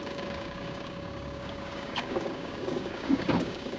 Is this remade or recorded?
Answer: remade